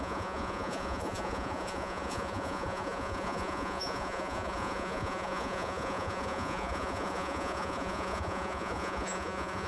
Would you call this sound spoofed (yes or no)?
yes